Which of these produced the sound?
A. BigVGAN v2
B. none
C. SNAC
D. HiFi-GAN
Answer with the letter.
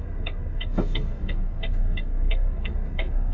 C